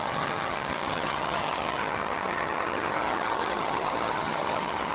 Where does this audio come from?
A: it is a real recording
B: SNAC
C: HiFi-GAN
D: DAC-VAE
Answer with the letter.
C